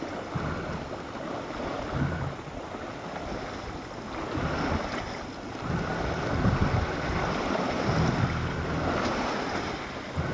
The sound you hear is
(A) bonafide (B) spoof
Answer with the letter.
A